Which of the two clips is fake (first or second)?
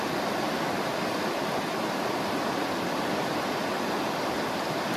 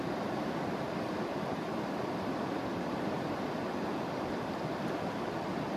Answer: second